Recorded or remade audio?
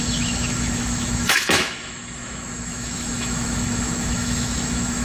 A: remade